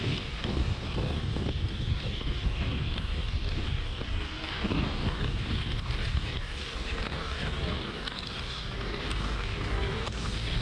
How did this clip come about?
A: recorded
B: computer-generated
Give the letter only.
B